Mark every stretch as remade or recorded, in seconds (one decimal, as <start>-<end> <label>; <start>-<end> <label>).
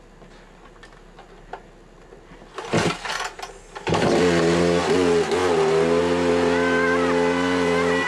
0.0-8.1 recorded